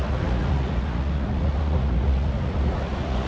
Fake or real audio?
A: fake